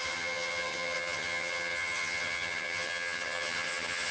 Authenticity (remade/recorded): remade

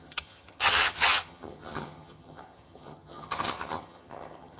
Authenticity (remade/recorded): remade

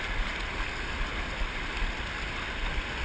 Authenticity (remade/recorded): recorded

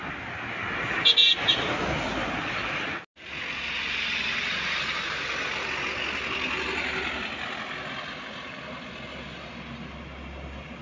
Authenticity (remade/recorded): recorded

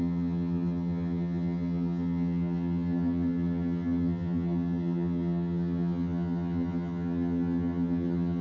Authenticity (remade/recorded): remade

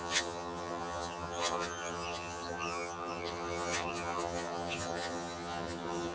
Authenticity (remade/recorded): remade